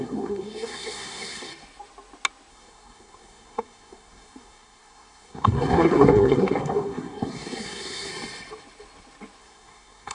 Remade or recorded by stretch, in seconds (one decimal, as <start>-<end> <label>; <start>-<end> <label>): 0.0-1.5 remade; 1.5-2.5 recorded; 2.5-8.1 remade; 8.1-9.4 recorded; 9.4-10.1 remade